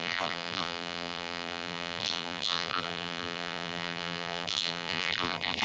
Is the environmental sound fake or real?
fake